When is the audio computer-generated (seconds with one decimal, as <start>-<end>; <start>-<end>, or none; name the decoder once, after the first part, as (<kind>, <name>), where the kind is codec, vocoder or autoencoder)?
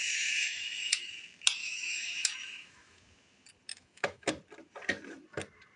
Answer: 0.0-1.1 (autoencoder, DAC-VAE); 1.6-3.0; 3.7-4.3